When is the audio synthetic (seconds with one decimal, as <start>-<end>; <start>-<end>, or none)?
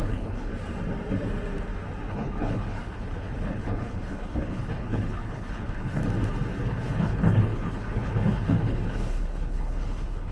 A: 0.0-0.5; 2.1-6.0; 6.6-10.3